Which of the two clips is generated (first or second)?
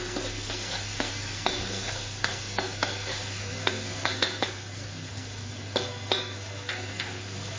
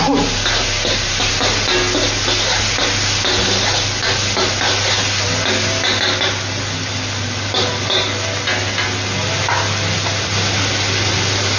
first